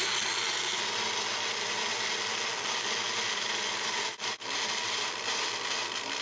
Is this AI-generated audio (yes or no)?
no